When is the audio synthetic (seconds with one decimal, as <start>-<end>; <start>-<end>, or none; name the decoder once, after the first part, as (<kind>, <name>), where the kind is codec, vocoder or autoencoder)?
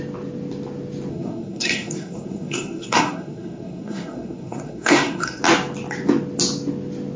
1.1-5.4 (codec, SNAC)